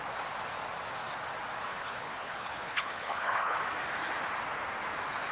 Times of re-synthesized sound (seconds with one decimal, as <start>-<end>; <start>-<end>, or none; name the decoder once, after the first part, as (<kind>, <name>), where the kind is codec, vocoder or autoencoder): 1.7-3.6 (codec, HILCodec)